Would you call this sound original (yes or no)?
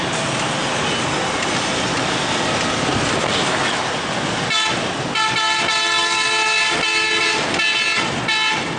yes